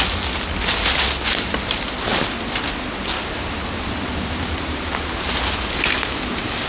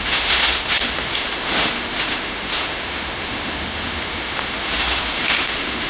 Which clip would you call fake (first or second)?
second